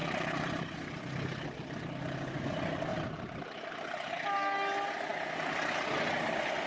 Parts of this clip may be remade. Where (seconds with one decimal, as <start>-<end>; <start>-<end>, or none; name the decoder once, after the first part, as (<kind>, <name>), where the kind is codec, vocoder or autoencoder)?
0.0-0.6 (vocoder, BigVGAN v2); 2.9-3.7